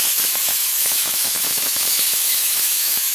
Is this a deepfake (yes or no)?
yes